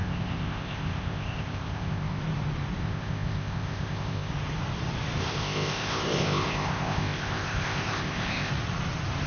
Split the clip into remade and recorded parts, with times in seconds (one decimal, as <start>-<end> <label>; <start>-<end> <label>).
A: 0.0-2.2 remade; 2.2-2.8 recorded; 2.8-4.3 remade; 4.3-5.2 recorded; 5.2-8.5 remade; 8.5-9.3 recorded